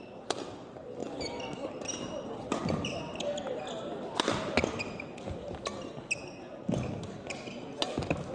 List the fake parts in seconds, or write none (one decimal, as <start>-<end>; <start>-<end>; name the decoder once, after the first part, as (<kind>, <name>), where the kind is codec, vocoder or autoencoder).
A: none

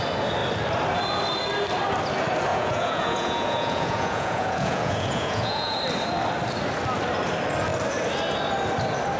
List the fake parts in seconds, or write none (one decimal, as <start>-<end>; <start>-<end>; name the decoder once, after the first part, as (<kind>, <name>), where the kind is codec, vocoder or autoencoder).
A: 2.5-5.8 (vocoder, Vocos)

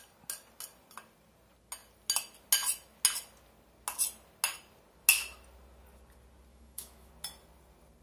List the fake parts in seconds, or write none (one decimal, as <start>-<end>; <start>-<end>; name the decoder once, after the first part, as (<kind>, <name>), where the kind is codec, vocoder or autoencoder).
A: 6.5-7.1 (autoencoder, DAC-VAE)

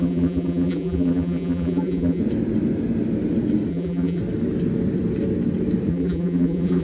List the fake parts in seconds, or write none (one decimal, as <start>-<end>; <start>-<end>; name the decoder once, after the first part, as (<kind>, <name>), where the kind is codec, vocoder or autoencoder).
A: 0.0-2.2 (vocoder, BigVGAN v2); 3.7-4.2; 5.9-6.8

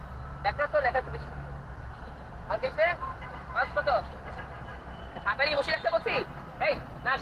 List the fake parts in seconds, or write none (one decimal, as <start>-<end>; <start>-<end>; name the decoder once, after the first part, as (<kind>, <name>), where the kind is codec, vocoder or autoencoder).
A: none

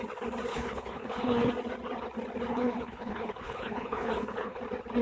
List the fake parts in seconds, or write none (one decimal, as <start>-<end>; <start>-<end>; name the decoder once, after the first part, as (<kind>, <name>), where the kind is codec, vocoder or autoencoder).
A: 0.5-1.5 (codec, HILCodec); 2.5-4.6

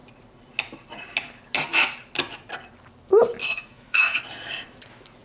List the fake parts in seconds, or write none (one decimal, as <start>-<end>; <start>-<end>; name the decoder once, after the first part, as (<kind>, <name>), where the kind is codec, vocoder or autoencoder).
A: 3.4-4.2 (autoencoder, DAC-VAE)

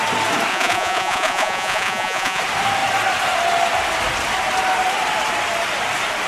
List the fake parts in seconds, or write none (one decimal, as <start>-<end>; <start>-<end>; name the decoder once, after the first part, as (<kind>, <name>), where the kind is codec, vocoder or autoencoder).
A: 0.5-2.4 (vocoder, Vocos)